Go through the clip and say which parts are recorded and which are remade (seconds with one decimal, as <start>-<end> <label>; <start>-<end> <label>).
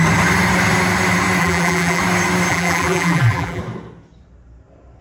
0.0-1.4 recorded; 1.4-2.0 remade; 2.0-2.5 recorded; 2.5-3.6 remade; 3.6-5.0 recorded